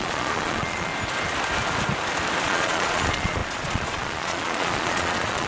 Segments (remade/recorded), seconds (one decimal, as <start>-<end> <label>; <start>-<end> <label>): 0.0-0.9 remade; 0.9-2.4 recorded; 2.4-5.5 remade